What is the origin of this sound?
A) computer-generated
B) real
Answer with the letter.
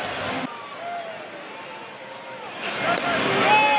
B